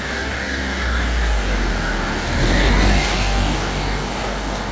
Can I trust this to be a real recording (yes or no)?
no